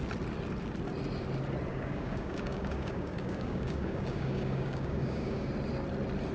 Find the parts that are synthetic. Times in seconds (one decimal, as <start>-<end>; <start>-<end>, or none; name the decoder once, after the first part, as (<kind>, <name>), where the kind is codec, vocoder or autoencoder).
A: 1.7-5.5 (codec, DAC)